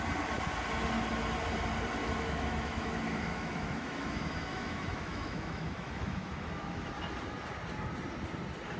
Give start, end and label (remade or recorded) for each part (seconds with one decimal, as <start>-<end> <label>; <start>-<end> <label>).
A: 0.0-2.0 recorded; 2.0-6.9 remade; 6.9-8.8 recorded